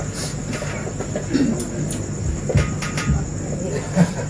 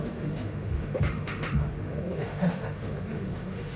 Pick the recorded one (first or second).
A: first